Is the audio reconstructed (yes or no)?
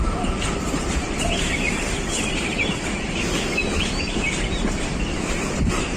yes